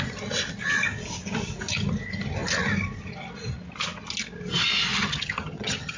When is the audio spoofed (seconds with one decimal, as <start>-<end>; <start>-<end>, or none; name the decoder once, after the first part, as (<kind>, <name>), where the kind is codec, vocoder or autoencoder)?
4.9-6.0 (vocoder, HiFi-GAN)